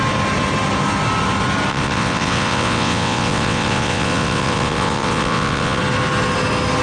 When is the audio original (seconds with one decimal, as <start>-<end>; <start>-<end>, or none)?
0.0-1.7; 5.8-6.8